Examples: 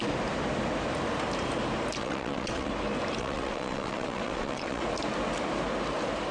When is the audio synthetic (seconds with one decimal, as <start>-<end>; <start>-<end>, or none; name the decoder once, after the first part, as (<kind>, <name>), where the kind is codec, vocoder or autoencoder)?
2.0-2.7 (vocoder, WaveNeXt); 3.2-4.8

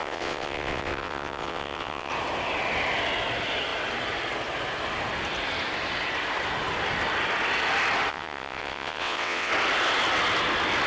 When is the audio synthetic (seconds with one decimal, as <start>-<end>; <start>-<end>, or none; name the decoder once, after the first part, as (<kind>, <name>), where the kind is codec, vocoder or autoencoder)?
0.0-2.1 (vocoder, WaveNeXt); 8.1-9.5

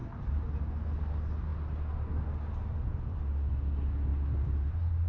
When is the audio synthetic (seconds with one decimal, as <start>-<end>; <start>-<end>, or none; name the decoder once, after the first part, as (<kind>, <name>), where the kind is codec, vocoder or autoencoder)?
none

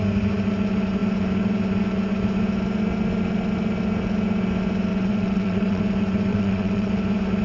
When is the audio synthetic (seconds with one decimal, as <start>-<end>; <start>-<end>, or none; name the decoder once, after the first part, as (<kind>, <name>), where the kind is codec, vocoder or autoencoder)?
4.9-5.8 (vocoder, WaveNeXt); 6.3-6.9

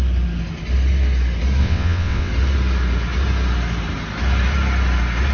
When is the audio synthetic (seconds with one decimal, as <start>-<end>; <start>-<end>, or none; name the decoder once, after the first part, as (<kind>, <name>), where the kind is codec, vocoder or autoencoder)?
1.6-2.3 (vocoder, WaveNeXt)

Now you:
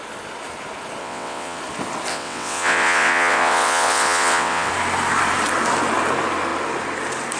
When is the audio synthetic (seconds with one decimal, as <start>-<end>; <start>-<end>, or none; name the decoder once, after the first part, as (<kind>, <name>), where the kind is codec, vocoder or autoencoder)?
1.0-1.6 (vocoder, WaveNeXt); 2.1-4.7